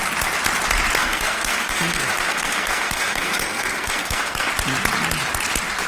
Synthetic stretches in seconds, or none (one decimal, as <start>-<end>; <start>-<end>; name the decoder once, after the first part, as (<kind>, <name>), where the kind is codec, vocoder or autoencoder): 1.0-4.5 (codec, SNAC)

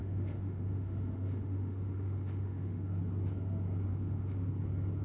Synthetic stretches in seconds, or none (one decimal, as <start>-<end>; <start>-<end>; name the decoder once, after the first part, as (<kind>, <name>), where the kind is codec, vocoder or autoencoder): 0.0-3.0 (autoencoder, DAC-VAE); 3.9-4.5

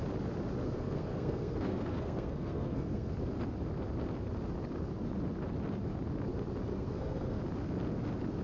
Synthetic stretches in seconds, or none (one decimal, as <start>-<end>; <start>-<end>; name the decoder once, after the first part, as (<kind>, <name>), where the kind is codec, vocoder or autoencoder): 0.6-3.1 (codec, SNAC); 6.7-7.4

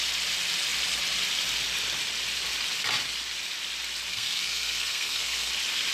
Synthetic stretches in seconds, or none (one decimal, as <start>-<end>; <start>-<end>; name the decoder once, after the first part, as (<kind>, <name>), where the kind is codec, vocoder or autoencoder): 4.1-5.5 (codec, SNAC)